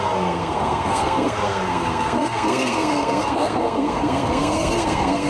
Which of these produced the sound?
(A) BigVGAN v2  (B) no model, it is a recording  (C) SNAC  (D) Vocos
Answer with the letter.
C